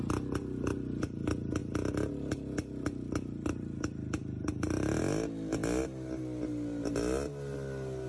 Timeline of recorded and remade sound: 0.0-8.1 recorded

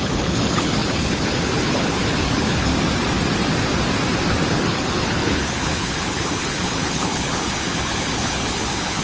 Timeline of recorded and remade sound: 0.0-2.7 remade; 2.7-4.5 recorded; 4.5-9.0 remade

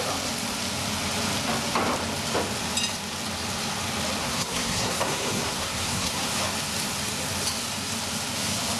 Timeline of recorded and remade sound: 0.0-4.2 recorded; 4.2-6.3 remade; 6.3-8.8 recorded

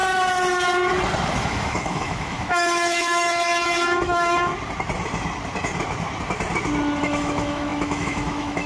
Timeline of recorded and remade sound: 0.0-1.3 recorded; 1.3-4.5 remade; 4.5-7.0 recorded; 7.0-8.7 remade

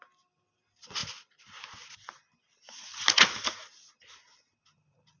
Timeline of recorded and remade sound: 0.0-5.2 recorded

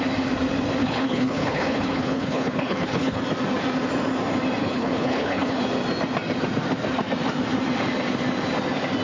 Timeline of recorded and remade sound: 0.0-0.8 recorded; 0.8-3.2 remade; 3.2-4.6 recorded; 4.6-5.6 remade; 5.6-9.0 recorded

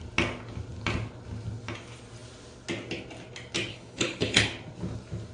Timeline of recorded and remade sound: 0.0-3.7 recorded; 3.7-4.5 remade; 4.5-5.3 recorded